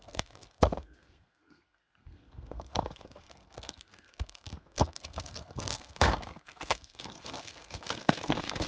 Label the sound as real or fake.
fake